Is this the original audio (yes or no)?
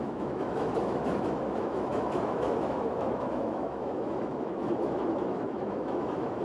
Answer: no